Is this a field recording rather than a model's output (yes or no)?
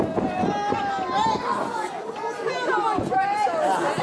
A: yes